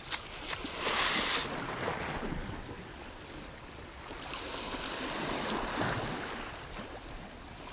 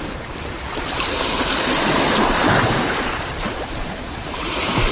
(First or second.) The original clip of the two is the first